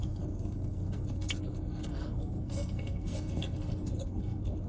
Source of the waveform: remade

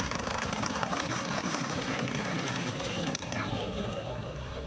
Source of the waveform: remade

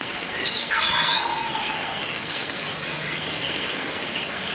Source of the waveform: remade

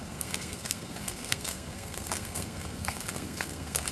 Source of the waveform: remade